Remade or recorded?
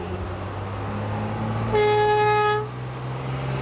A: recorded